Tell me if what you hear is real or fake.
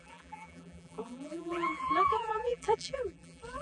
fake